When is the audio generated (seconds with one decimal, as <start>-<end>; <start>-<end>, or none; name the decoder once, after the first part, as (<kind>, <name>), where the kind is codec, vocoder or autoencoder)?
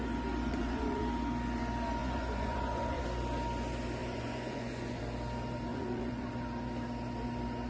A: 0.5-1.0 (vocoder, Vocos); 2.0-3.0; 4.0-5.0; 5.7-6.3